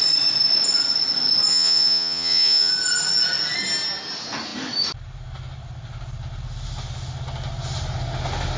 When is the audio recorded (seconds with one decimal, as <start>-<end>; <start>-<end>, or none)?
0.0-1.5; 2.7-8.6